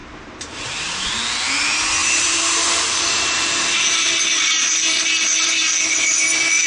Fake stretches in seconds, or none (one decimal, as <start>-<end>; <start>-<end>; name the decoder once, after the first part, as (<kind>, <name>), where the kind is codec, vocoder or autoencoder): 0.0-1.1 (vocoder, BigVGAN v2); 2.0-5.6